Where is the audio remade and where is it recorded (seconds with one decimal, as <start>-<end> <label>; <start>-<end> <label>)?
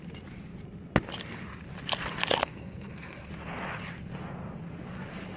0.0-2.4 recorded; 2.4-3.3 remade; 3.3-5.4 recorded